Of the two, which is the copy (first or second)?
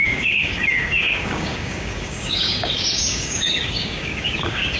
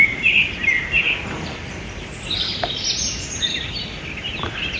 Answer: first